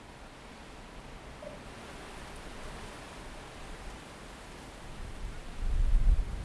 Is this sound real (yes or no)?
yes